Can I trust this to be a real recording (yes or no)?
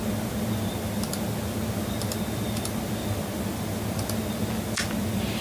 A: yes